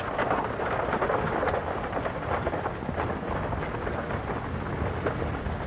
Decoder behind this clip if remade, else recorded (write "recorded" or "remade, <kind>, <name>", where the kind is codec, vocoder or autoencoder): recorded